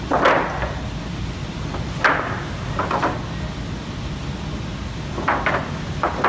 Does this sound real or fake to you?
real